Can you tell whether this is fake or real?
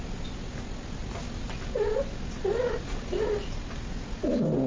real